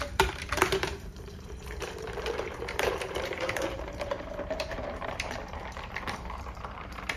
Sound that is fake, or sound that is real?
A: fake